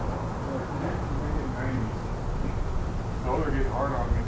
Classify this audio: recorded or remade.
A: recorded